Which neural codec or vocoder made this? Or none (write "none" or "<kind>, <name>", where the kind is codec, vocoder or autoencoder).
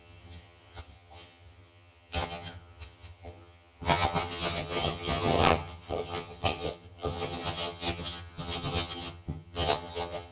vocoder, HiFi-GAN